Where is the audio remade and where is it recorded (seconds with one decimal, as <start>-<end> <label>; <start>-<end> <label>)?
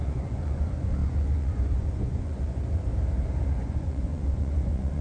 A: 0.0-2.9 remade; 2.9-3.5 recorded; 3.5-5.0 remade